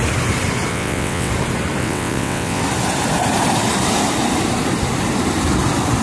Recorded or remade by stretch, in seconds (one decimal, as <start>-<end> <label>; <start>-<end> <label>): 0.0-0.7 recorded; 0.7-1.3 remade; 1.3-1.8 recorded; 1.8-2.6 remade; 2.6-6.0 recorded